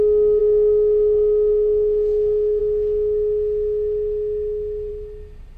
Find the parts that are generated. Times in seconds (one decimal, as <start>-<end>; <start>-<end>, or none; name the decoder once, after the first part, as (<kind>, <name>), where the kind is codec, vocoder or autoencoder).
0.4-2.6 (codec, SNAC)